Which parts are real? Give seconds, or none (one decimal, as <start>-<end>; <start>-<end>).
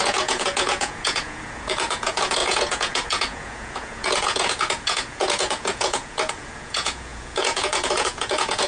none